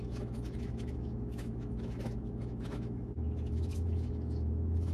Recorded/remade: remade